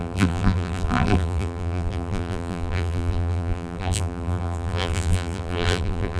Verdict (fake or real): fake